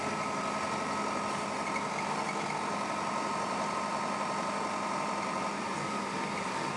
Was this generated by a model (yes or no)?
no